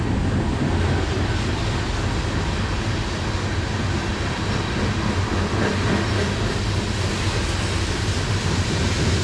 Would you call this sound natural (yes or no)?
yes